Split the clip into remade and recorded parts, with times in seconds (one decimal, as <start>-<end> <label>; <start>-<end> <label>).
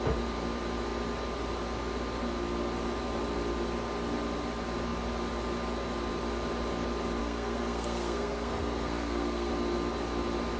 0.0-7.2 recorded; 7.2-9.5 remade; 9.5-10.6 recorded